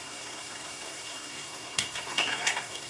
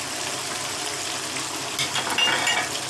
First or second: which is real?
second